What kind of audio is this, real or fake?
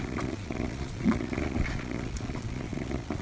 fake